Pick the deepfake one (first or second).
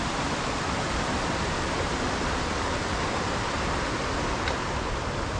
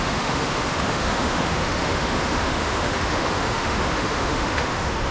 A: second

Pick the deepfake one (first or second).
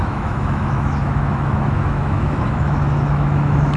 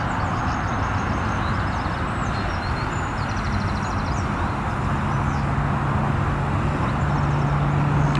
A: first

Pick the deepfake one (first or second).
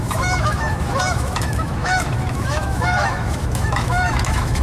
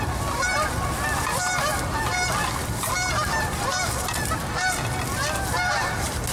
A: first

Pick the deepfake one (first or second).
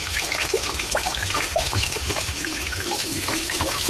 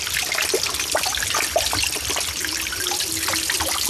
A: first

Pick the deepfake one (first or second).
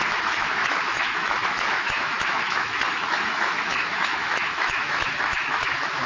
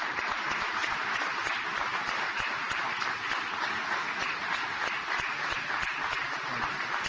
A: first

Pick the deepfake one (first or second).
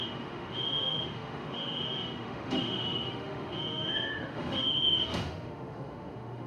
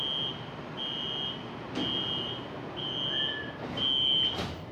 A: first